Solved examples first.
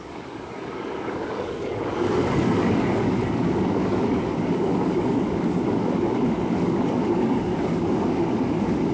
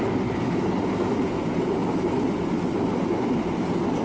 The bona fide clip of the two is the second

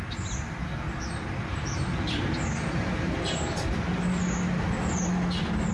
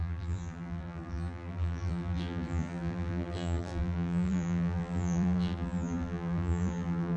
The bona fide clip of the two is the first